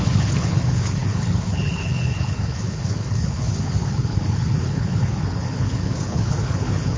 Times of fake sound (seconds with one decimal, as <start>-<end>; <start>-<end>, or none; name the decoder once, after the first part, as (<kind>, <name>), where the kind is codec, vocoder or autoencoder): 0.0-7.0 (codec, HILCodec)